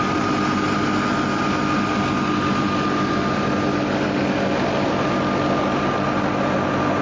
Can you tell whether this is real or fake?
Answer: real